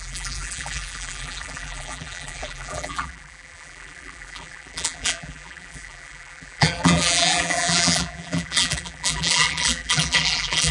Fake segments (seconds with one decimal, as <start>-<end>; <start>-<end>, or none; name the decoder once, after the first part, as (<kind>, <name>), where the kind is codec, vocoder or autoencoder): 0.0-10.7 (vocoder, BigVGAN v2)